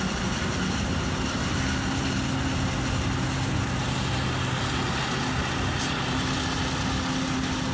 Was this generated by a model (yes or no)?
no